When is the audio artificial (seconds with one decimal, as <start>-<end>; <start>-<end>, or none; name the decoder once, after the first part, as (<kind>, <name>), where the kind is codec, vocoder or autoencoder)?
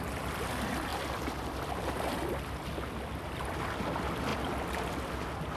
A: none